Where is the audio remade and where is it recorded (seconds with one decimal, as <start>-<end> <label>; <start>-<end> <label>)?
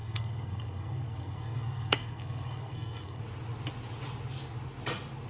0.0-3.2 remade; 3.2-5.3 recorded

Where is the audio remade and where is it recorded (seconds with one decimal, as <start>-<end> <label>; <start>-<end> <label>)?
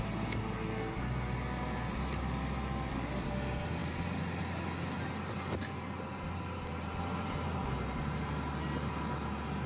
0.0-9.7 recorded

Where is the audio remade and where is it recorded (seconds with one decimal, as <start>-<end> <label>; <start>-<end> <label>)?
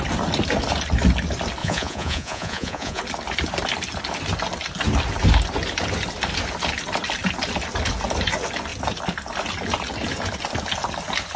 0.0-1.6 recorded; 1.6-3.0 remade; 3.0-11.4 recorded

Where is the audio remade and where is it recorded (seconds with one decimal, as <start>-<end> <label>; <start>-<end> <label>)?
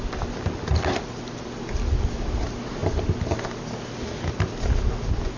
0.0-5.4 recorded